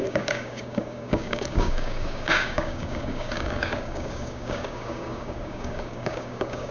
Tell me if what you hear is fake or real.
fake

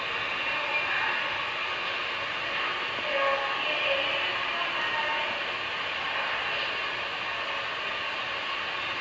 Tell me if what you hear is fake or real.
real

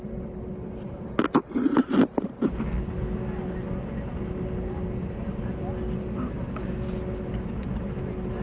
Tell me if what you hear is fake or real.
real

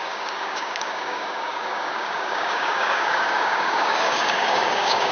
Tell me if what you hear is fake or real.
fake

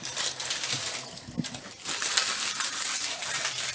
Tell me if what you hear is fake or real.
real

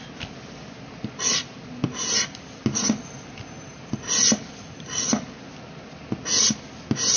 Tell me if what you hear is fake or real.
real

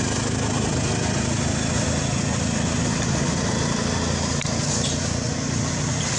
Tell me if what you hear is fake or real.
real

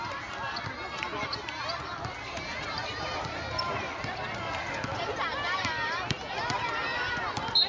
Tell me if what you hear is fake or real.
real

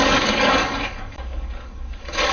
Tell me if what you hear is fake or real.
fake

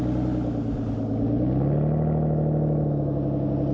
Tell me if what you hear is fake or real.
real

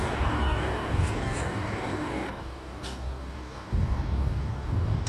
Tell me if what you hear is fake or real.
fake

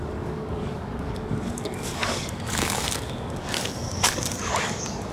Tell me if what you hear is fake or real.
fake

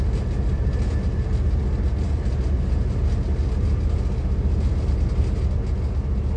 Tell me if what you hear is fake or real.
real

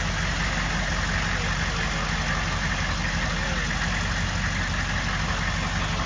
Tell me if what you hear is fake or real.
real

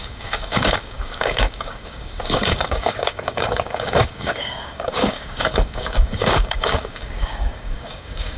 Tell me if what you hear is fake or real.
fake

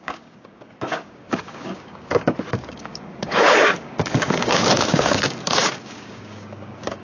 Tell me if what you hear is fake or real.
fake